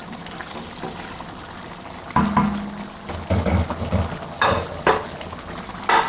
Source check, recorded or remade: recorded